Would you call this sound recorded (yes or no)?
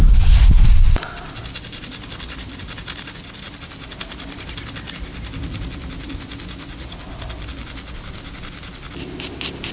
yes